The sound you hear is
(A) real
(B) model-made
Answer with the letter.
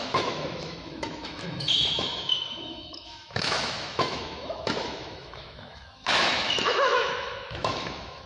B